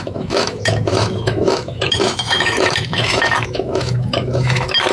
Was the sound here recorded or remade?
remade